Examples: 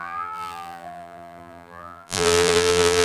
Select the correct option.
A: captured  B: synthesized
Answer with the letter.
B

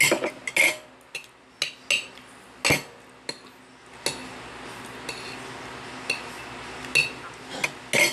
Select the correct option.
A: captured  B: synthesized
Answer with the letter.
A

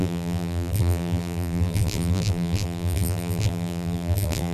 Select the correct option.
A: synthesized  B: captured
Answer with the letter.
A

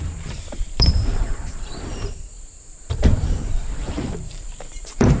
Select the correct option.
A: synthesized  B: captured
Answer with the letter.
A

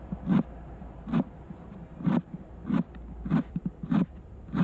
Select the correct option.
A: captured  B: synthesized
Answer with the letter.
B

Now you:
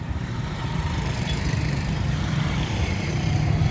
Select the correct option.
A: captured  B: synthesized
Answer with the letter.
B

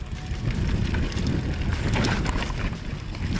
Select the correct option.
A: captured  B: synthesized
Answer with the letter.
A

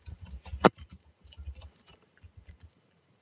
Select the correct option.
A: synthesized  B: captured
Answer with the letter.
A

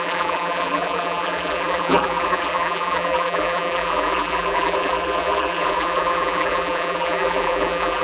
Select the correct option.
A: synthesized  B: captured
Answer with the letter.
A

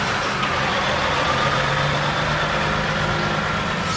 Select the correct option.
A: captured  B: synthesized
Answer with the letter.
A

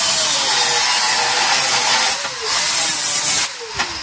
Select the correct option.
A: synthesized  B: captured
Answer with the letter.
B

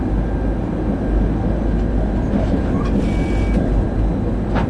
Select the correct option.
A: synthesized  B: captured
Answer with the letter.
B